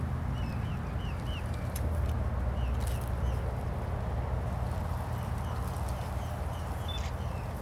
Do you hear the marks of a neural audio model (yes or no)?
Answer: no